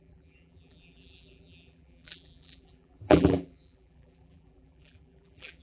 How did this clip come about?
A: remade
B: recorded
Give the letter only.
A